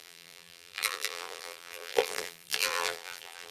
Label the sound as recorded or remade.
remade